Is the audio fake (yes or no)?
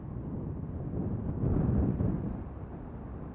no